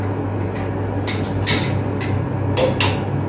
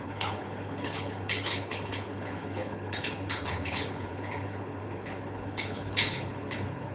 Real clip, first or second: first